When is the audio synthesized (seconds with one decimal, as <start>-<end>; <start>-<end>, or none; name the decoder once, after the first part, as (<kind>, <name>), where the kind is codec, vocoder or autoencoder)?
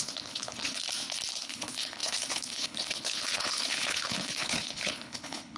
0.0-0.8 (codec, HILCodec); 1.3-5.6